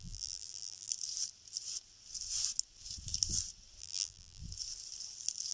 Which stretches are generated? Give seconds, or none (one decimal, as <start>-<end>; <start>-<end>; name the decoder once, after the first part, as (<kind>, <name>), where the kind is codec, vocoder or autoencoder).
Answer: 0.0-0.9 (vocoder, BigVGAN v2); 3.8-4.4